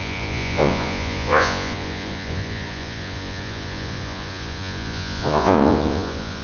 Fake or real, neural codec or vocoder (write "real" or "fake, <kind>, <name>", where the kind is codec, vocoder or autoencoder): fake, vocoder, Vocos